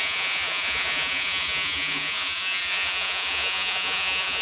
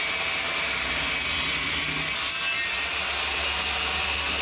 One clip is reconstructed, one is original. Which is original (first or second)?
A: second